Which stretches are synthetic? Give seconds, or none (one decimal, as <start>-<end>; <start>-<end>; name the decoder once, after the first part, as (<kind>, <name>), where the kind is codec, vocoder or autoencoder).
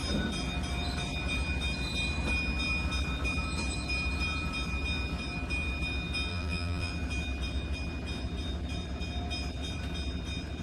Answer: 6.3-6.9 (vocoder, BigVGAN v2)